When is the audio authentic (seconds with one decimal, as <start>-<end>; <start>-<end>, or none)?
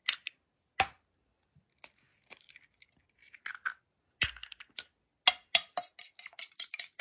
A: 0.0-7.0